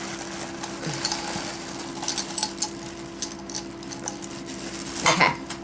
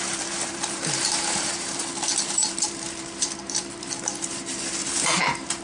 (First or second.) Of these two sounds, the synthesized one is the second